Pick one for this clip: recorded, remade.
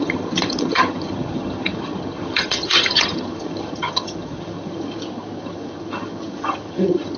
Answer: remade